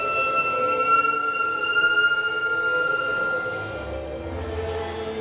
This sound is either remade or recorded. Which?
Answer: recorded